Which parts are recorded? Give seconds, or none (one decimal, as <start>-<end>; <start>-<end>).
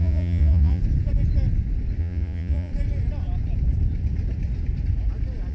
0.8-2.0; 2.7-5.5